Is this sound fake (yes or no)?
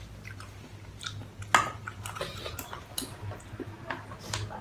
no